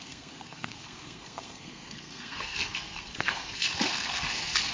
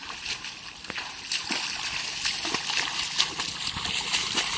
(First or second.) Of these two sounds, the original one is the second